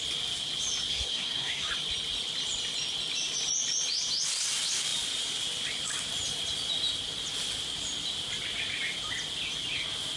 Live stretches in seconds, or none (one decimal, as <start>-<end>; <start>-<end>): 0.0-0.9; 1.7-10.2